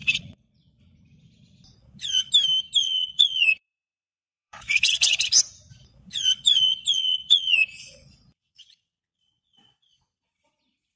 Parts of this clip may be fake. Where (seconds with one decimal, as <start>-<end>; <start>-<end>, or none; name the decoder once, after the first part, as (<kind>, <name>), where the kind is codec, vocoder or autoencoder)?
0.0-0.8 (vocoder, Vocos); 1.8-2.3; 2.8-5.2; 5.8-10.5